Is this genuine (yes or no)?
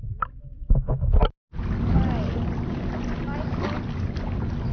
yes